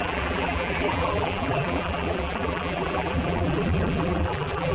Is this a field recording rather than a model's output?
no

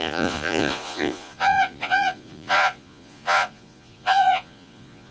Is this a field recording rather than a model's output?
no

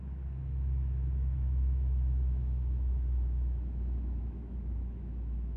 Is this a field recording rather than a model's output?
no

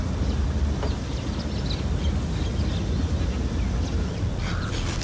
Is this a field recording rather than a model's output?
yes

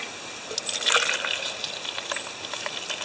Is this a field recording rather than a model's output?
yes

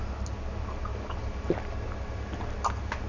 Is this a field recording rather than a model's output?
yes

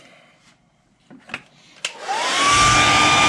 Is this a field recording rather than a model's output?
yes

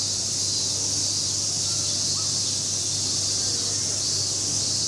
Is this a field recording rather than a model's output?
yes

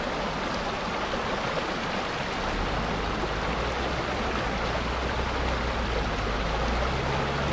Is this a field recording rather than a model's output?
yes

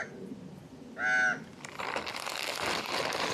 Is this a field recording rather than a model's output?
yes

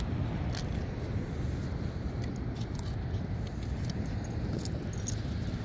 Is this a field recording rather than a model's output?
yes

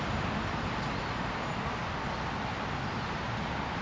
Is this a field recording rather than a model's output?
yes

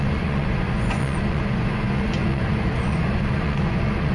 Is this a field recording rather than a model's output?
no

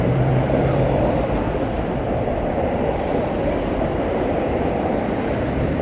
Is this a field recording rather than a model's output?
no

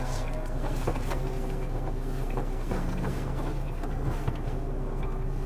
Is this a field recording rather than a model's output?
no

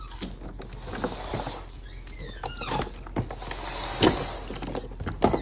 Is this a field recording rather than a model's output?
yes